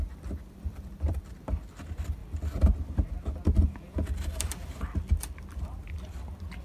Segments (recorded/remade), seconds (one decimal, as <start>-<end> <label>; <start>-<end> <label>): 0.0-1.2 remade; 1.2-6.6 recorded